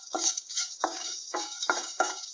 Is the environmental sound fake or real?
fake